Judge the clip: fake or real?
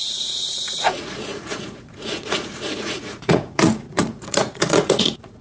fake